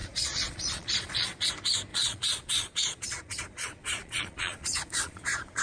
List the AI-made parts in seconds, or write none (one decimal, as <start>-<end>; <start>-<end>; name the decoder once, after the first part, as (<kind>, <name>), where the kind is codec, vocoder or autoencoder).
0.0-1.5 (vocoder, Vocos); 1.9-5.6